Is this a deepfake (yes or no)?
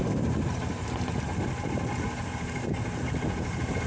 no